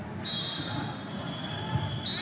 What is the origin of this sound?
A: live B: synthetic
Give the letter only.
A